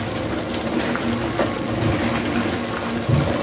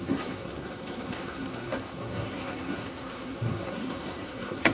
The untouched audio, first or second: first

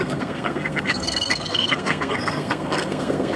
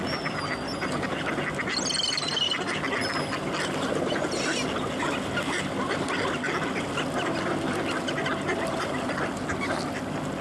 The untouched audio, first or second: second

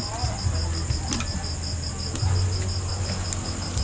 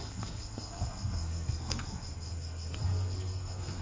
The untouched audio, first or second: first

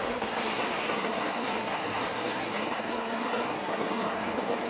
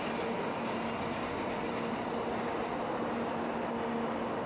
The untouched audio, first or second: second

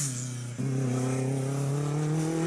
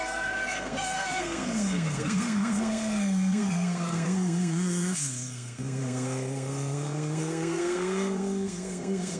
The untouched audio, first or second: first